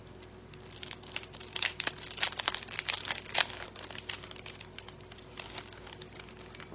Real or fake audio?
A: real